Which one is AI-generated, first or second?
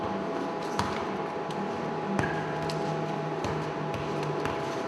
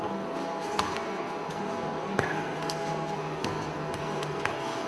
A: second